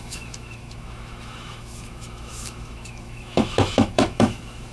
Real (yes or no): no